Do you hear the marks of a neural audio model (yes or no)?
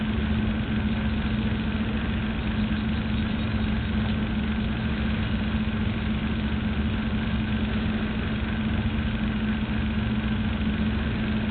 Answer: no